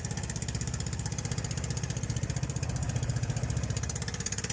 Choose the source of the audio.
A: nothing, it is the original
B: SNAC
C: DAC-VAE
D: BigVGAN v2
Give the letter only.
D